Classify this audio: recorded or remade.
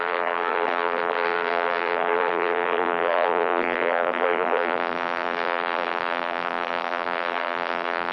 remade